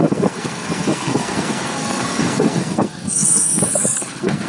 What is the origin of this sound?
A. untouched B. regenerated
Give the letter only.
B